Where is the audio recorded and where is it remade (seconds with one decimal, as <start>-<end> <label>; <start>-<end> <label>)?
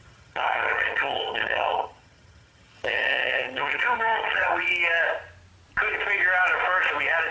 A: 0.0-4.7 remade; 4.7-7.3 recorded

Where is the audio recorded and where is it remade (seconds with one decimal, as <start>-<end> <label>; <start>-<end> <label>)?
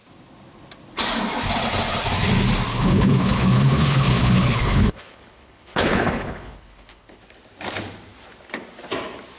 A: 0.0-2.7 recorded; 2.7-7.2 remade; 7.2-9.4 recorded